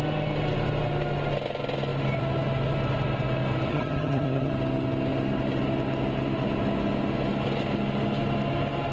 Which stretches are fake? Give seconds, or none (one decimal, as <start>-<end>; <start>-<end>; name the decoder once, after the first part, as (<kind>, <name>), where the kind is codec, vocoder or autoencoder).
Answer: 3.7-4.5 (vocoder, HiFi-GAN)